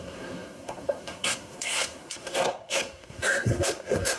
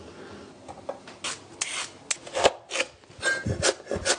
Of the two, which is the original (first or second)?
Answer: second